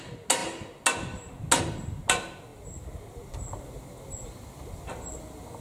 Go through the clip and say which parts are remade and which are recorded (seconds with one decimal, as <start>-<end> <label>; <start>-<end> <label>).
0.0-5.6 recorded